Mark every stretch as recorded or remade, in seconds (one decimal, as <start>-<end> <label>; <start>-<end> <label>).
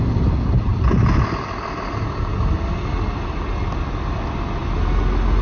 0.0-5.4 recorded